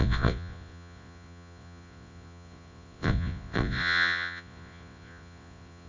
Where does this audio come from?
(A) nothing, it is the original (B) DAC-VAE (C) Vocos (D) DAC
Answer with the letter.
C